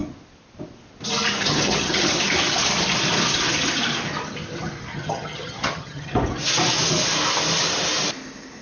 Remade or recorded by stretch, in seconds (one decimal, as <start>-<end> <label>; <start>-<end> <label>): 0.0-1.4 recorded; 1.4-2.1 remade; 2.1-4.9 recorded; 4.9-6.1 remade; 6.1-8.6 recorded